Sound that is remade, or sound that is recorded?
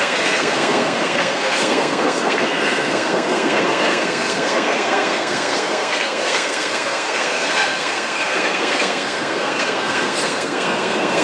remade